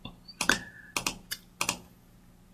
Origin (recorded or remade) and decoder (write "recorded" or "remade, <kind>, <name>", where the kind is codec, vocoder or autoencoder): recorded